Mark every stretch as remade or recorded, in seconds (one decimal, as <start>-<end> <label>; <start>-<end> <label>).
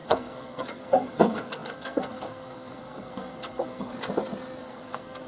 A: 0.0-3.9 remade; 3.9-4.6 recorded; 4.6-5.3 remade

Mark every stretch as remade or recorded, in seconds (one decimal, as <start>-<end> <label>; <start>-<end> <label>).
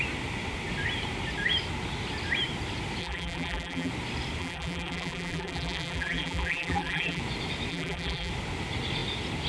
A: 0.0-3.0 recorded; 3.0-3.9 remade; 3.9-4.4 recorded; 4.4-7.2 remade; 7.2-7.7 recorded; 7.7-8.3 remade; 8.3-9.5 recorded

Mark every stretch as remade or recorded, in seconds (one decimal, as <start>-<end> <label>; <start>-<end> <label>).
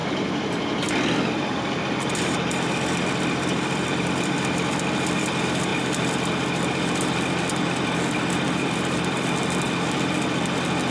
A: 0.0-1.1 recorded; 1.1-10.9 remade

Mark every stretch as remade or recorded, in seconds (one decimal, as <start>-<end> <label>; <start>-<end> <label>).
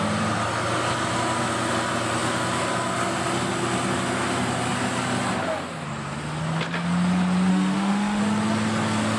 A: 0.0-7.5 recorded; 7.5-8.2 remade; 8.2-9.2 recorded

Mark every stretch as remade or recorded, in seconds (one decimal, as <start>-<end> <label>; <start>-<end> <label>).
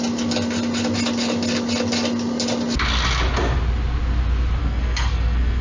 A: 0.0-4.6 recorded; 4.6-5.6 remade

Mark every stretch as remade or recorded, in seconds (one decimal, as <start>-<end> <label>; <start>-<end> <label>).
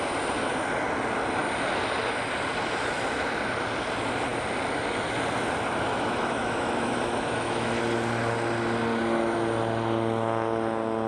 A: 0.0-5.9 recorded; 5.9-7.8 remade; 7.8-11.1 recorded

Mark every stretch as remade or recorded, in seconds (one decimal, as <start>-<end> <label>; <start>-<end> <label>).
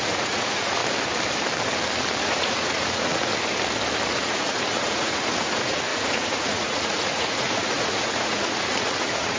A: 0.0-0.8 remade; 0.8-2.2 recorded; 2.2-3.3 remade; 3.3-4.1 recorded; 4.1-9.4 remade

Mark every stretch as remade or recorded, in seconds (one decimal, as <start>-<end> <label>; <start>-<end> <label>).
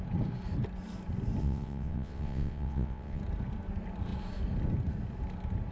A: 0.0-1.4 recorded; 1.4-3.2 remade; 3.2-5.7 recorded